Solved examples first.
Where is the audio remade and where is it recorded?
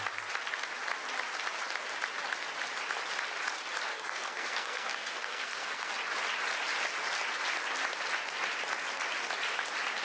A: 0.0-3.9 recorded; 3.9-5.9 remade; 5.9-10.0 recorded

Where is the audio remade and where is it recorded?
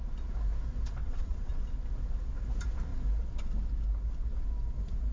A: 0.0-1.0 recorded; 1.0-1.5 remade; 1.5-5.1 recorded